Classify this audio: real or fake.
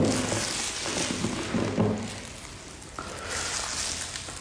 real